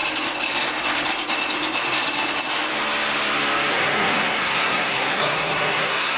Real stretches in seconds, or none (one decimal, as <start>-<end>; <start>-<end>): 0.0-3.7